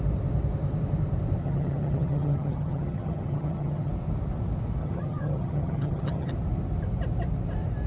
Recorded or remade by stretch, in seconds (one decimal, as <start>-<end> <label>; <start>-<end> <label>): 0.0-1.4 recorded; 1.4-3.9 remade; 3.9-4.8 recorded; 4.8-6.3 remade; 6.3-7.9 recorded

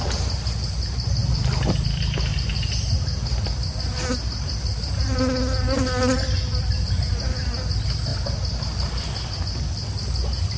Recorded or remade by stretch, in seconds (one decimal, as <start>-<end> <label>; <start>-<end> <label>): 0.0-10.6 recorded

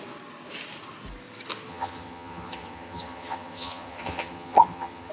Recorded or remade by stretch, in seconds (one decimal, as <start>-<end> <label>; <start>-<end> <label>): 0.0-1.7 recorded; 1.7-5.1 remade